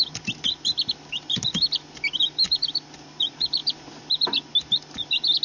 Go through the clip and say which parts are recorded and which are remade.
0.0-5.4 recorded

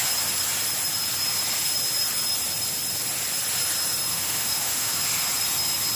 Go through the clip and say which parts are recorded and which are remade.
0.0-4.1 recorded; 4.1-5.0 remade; 5.0-5.9 recorded

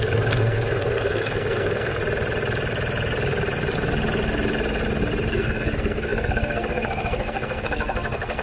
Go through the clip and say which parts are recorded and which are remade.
0.0-2.0 remade; 2.0-5.3 recorded; 5.3-8.4 remade